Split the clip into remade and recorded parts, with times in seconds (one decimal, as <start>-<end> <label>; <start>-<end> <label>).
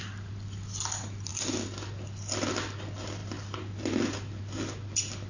0.0-5.3 recorded